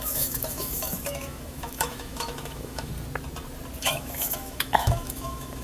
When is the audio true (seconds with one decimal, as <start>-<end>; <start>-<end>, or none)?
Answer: 2.9-3.8